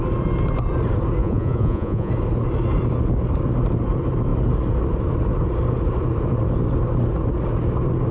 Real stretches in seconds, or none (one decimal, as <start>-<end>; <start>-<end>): 0.0-1.2; 2.1-8.1